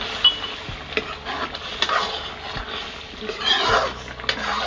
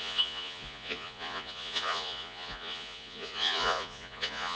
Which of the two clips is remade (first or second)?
second